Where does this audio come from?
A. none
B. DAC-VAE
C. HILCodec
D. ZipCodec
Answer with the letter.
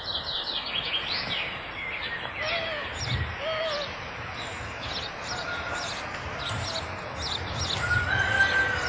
A